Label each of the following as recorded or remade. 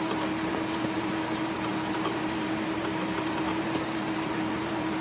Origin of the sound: remade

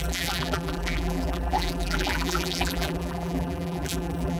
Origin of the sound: remade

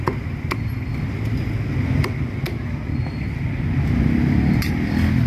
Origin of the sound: recorded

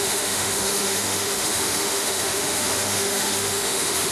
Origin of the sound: remade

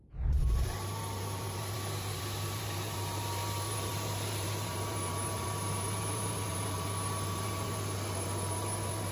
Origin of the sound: remade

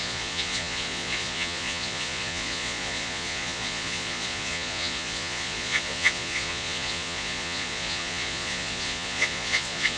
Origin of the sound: remade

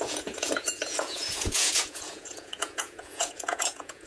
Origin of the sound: remade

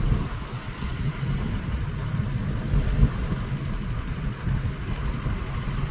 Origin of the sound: recorded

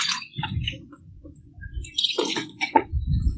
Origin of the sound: remade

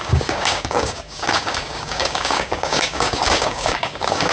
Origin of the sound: remade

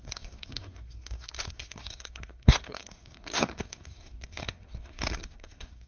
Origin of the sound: remade